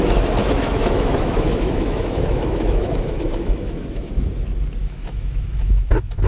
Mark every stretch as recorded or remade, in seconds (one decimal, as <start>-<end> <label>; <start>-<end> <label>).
0.0-0.4 recorded; 0.4-4.1 remade; 4.1-4.8 recorded; 4.8-6.3 remade